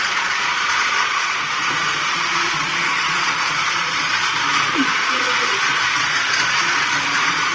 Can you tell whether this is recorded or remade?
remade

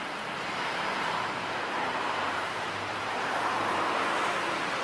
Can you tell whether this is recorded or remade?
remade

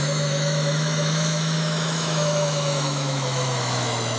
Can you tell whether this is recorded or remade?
remade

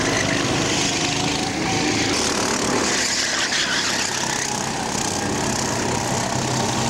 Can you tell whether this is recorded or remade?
recorded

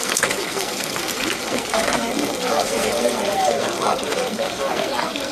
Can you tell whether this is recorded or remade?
remade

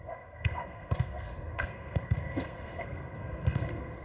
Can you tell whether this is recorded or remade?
remade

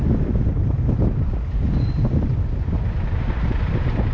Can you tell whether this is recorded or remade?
recorded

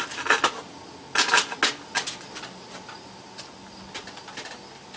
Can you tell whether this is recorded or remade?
recorded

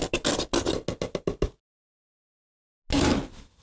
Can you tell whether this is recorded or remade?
recorded